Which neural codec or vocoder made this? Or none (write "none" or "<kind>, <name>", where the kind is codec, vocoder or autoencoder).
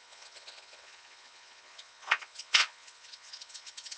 vocoder, Vocos